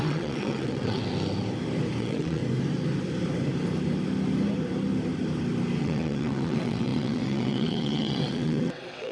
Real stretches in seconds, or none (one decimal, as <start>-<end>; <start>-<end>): 1.0-2.0; 2.4-5.8